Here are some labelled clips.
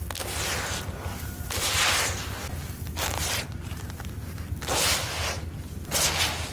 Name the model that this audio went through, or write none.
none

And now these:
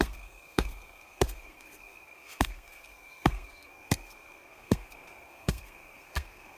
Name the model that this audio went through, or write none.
codec, SNAC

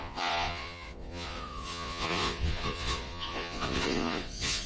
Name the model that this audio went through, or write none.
vocoder, Vocos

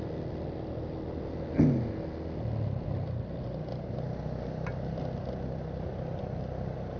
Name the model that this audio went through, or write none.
none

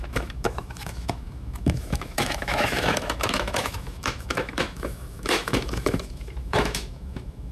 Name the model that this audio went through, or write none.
autoencoder, DAC-VAE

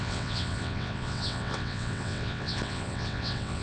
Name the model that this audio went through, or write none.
vocoder, WaveNeXt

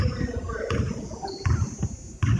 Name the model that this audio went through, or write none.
none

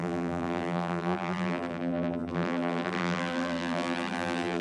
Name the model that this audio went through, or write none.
vocoder, BigVGAN v2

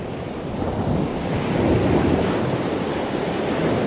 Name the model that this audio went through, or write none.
none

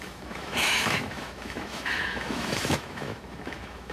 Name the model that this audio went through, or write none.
autoencoder, DAC-VAE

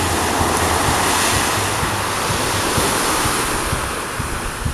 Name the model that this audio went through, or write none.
none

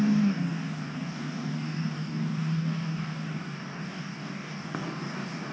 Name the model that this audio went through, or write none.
codec, DAC